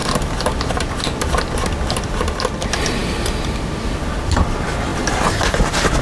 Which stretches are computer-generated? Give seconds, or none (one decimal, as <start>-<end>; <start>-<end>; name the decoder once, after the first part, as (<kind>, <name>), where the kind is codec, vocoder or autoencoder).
none

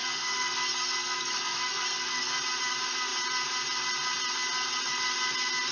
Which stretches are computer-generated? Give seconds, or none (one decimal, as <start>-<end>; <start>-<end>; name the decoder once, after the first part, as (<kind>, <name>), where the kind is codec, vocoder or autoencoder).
0.0-2.4 (codec, SNAC)

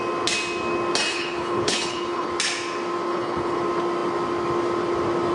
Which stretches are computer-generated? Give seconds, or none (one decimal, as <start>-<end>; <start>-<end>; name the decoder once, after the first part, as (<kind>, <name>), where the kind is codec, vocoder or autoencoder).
1.1-2.3 (codec, HILCodec); 3.1-3.6

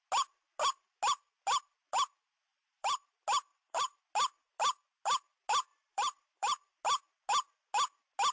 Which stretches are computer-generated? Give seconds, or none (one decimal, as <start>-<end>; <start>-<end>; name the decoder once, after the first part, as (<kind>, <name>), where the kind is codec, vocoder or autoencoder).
2.5-3.1 (vocoder, BigVGAN v2); 3.5-4.0; 5.7-6.8

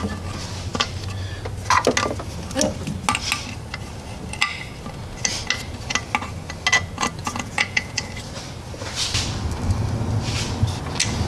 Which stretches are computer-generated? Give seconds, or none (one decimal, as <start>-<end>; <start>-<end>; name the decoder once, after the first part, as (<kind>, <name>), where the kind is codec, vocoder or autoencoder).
7.2-8.0 (vocoder, Vocos)